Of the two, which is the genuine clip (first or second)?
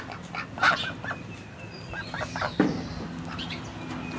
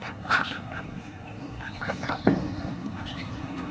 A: first